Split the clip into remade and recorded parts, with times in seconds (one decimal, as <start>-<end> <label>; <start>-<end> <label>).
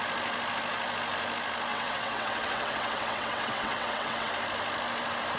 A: 0.0-1.7 recorded; 1.7-4.3 remade; 4.3-5.4 recorded